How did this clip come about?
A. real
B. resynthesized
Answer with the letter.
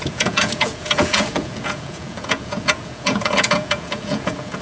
B